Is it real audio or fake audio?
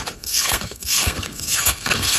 fake